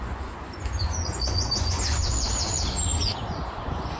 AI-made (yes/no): yes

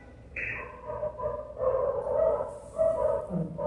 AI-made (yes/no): no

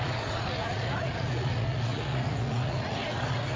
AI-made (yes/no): yes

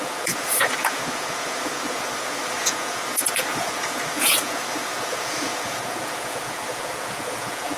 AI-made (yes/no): yes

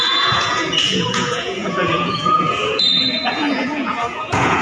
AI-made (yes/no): yes